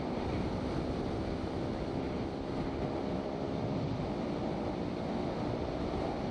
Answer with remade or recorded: recorded